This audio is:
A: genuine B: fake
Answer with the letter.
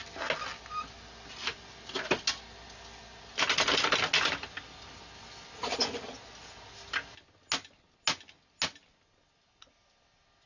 A